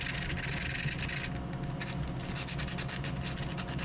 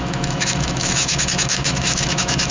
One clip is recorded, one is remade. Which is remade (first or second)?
second